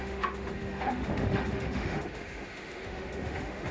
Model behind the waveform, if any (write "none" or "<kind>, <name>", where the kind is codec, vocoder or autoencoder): autoencoder, DAC-VAE